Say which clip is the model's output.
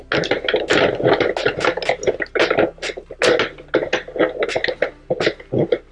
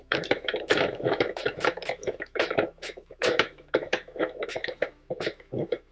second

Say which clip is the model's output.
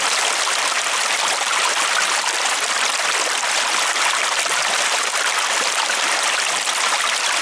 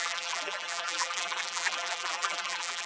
second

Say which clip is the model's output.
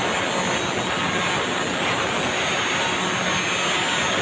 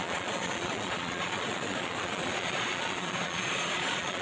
second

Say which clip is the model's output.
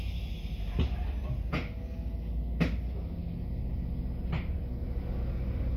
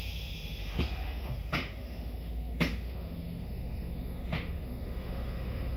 second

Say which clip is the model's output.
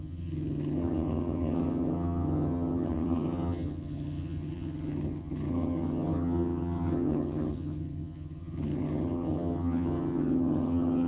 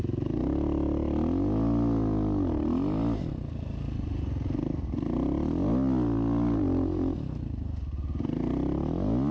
first